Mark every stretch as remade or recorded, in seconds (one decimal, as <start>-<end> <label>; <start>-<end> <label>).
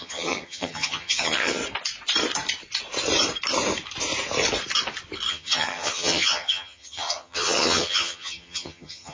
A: 0.0-1.6 remade; 1.6-5.3 recorded; 5.3-9.1 remade